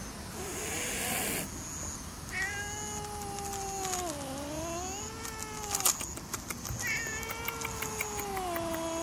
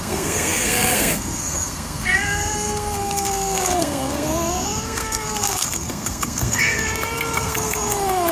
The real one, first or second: first